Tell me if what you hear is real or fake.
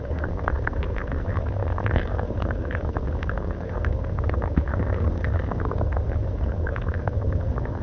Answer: fake